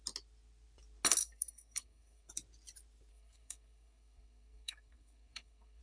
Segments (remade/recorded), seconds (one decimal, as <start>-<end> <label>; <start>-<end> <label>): 0.0-1.2 recorded; 1.2-2.3 remade; 2.3-3.1 recorded; 3.1-5.8 remade